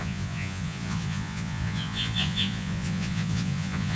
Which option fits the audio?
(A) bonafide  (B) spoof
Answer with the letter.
B